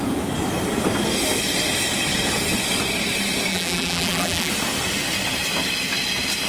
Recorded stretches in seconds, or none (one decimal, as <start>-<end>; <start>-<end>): 0.0-3.5; 4.5-6.5